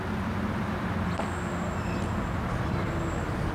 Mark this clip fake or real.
real